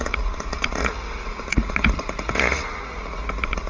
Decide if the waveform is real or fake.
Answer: fake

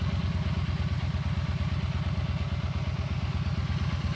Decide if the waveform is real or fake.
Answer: real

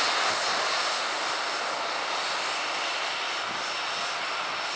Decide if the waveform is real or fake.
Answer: real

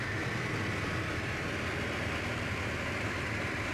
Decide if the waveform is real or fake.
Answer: real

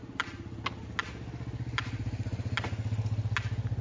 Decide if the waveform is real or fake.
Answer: real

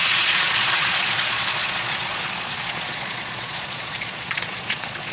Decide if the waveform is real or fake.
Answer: fake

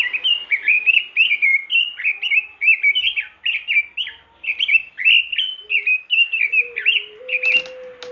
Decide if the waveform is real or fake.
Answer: real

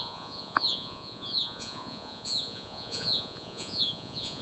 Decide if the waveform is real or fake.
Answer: fake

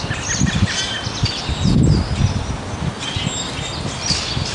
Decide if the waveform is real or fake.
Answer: real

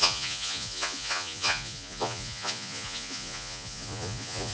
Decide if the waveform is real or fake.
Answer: fake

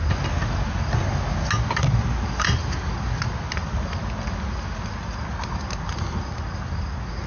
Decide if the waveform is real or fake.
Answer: real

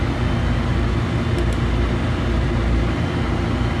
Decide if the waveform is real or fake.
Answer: real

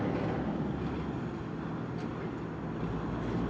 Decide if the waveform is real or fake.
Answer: real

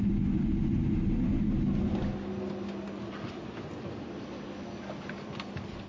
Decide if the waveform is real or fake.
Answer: real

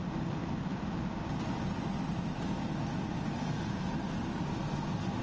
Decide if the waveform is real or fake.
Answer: real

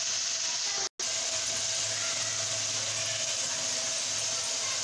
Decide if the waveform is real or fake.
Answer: real